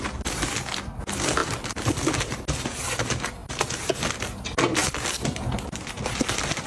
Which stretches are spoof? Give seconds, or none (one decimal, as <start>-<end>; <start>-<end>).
none